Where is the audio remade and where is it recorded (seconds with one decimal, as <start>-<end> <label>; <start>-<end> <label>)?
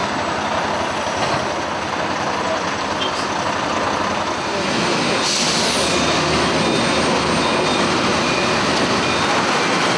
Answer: 0.0-10.0 recorded